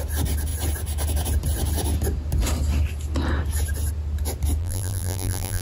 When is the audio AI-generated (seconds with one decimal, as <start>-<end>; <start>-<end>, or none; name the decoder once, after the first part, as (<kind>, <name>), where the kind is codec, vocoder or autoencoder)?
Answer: 4.6-5.6 (vocoder, BigVGAN v2)